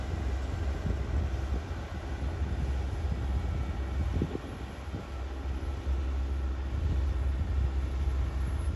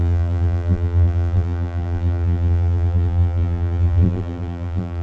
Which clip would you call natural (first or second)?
first